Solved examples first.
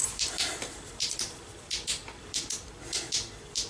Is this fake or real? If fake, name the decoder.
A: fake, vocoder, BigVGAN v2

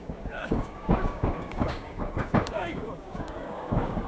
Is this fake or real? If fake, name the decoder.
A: fake, codec, DAC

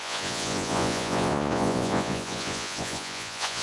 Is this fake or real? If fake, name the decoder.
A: fake, vocoder, Vocos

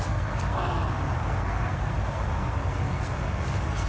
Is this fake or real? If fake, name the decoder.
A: fake, codec, SNAC